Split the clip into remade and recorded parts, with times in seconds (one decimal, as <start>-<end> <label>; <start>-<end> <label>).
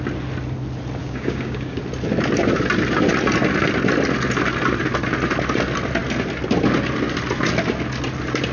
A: 0.0-1.0 recorded; 1.0-1.8 remade; 1.8-8.5 recorded